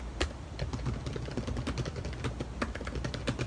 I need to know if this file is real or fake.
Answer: real